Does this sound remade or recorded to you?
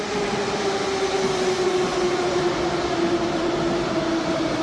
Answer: recorded